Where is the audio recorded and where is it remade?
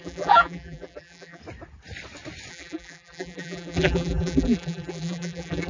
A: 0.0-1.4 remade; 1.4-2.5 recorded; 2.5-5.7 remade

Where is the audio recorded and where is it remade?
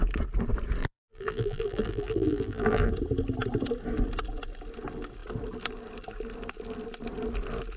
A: 0.0-0.8 recorded; 0.8-2.9 remade; 2.9-7.8 recorded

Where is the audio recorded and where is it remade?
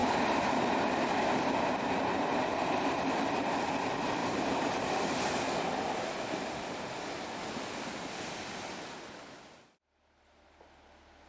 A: 0.0-0.6 remade; 0.6-4.2 recorded; 4.2-5.3 remade; 5.3-11.3 recorded